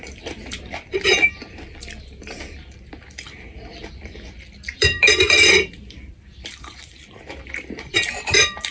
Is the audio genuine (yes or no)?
no